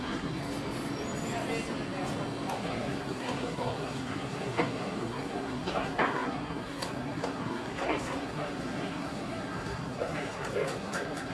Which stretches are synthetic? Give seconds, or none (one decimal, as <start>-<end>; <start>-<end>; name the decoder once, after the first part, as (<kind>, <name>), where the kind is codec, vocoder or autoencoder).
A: 0.0-0.4 (codec, SNAC); 2.5-11.3

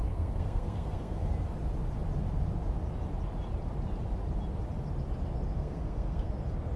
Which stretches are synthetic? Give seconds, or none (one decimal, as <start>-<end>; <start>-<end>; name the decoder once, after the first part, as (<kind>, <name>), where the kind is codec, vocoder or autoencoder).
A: 0.0-1.3 (codec, SNAC); 5.6-6.3

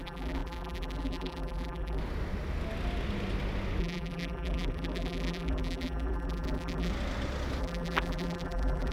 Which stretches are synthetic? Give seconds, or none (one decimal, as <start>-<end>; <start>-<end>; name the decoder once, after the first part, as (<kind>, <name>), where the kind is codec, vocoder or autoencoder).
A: 0.0-2.0 (vocoder, BigVGAN v2); 3.8-6.9; 7.6-8.9